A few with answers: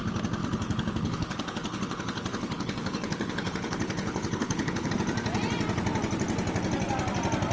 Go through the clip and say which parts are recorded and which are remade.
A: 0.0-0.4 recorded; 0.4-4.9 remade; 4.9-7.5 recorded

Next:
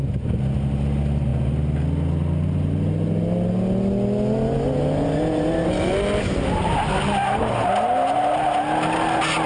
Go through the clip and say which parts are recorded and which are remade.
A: 0.0-9.5 recorded

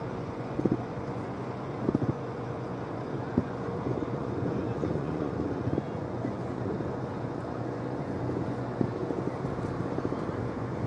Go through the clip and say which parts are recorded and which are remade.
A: 0.0-9.0 remade; 9.0-10.4 recorded; 10.4-10.9 remade

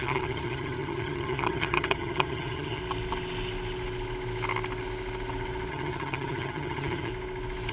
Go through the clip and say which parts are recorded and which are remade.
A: 0.0-2.8 remade; 2.8-5.7 recorded; 5.7-7.1 remade; 7.1-7.7 recorded

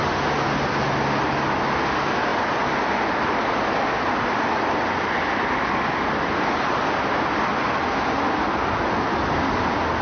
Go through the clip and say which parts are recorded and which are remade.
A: 0.0-10.0 recorded

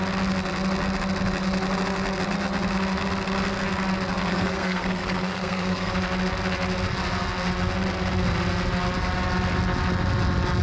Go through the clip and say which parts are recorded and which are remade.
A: 0.0-4.3 recorded; 4.3-5.9 remade; 5.9-10.6 recorded

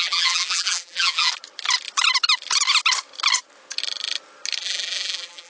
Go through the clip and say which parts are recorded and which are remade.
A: 0.0-1.3 remade; 1.3-4.6 recorded; 4.6-5.5 remade

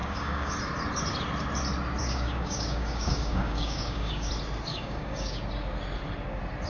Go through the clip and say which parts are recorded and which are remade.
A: 0.0-0.5 remade; 0.5-2.0 recorded; 2.0-4.3 remade; 4.3-4.7 recorded; 4.7-5.4 remade; 5.4-6.7 recorded